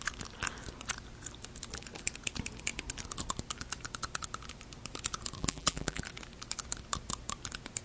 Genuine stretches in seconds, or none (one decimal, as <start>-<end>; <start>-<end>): 0.0-5.4; 6.0-7.8